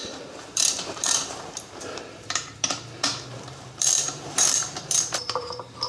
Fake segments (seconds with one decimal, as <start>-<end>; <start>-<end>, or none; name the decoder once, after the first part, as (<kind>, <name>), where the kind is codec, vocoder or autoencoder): 0.0-5.9 (vocoder, BigVGAN v2)